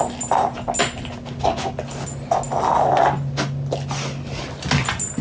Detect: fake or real real